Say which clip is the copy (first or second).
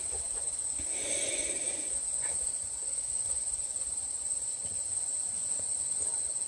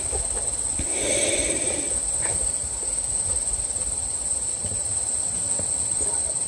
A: first